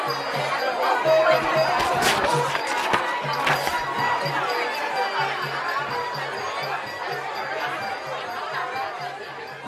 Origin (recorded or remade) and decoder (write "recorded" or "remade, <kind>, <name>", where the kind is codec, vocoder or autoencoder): recorded